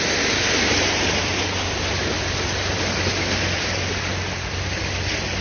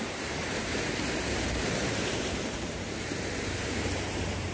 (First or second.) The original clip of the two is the first